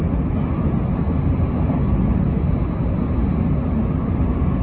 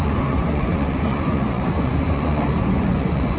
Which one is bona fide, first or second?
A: first